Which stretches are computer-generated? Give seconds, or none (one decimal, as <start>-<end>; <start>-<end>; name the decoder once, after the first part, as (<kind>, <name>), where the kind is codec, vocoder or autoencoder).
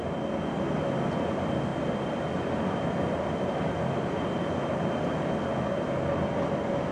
1.7-5.8 (vocoder, BigVGAN v2)